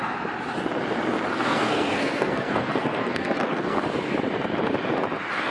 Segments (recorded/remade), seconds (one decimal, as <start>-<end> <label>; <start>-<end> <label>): 0.0-1.3 recorded; 1.3-3.8 remade; 3.8-5.5 recorded